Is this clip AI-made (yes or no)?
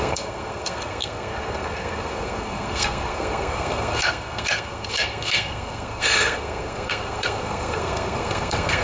yes